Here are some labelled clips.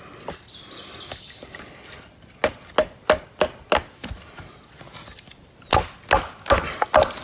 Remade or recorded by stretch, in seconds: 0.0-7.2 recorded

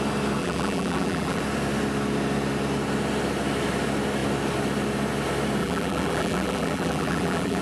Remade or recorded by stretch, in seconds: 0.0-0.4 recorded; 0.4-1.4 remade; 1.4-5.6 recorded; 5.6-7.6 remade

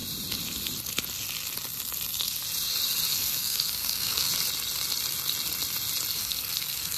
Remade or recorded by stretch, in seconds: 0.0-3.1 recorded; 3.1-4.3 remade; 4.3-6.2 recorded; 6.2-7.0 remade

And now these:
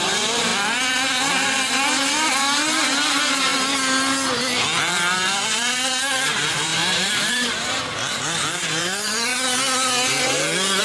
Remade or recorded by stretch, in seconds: 0.0-0.5 remade; 0.5-1.3 recorded; 1.3-3.5 remade; 3.5-5.1 recorded; 5.1-9.3 remade; 9.3-10.8 recorded

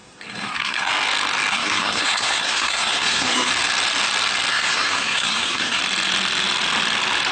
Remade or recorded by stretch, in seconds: 0.0-0.9 remade; 0.9-1.5 recorded; 1.5-3.5 remade; 3.5-4.5 recorded; 4.5-5.8 remade; 5.8-7.3 recorded

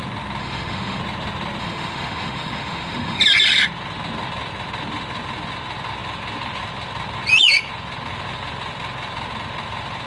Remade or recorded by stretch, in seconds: 0.0-0.4 recorded; 0.4-1.0 remade; 1.0-1.6 recorded; 1.6-3.2 remade; 3.2-10.1 recorded

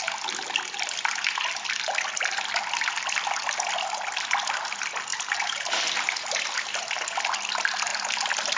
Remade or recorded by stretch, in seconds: 0.0-5.1 recorded; 5.1-6.8 remade; 6.8-8.6 recorded

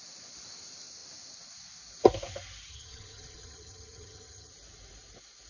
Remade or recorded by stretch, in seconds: 0.0-2.7 recorded; 2.7-4.5 remade; 4.5-5.5 recorded